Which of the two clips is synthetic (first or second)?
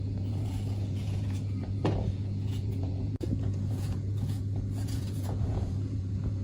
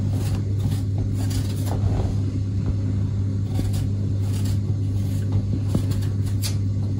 first